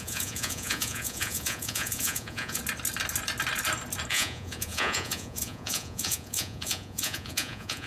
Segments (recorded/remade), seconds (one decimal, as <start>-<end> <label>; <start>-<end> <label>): 0.0-2.6 remade; 2.6-4.1 recorded; 4.1-7.9 remade